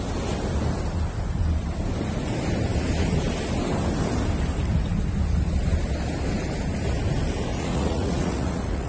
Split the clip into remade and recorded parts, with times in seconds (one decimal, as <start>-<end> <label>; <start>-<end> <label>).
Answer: 0.0-7.5 recorded; 7.5-8.9 remade